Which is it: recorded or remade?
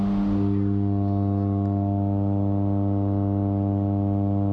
recorded